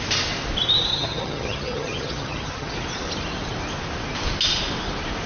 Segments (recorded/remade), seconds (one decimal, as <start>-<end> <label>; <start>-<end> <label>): 0.0-0.9 recorded; 0.9-2.7 remade; 2.7-5.3 recorded